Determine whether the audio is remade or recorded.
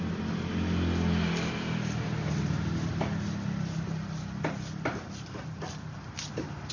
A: recorded